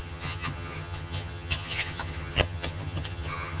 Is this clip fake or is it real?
fake